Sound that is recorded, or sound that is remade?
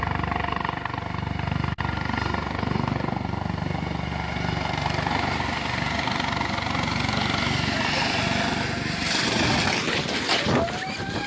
recorded